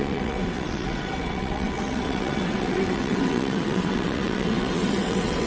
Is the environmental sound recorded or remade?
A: remade